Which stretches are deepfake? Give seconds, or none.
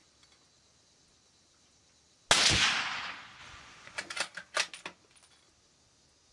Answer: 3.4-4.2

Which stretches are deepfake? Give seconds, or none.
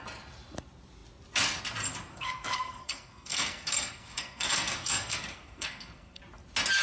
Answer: 2.1-6.2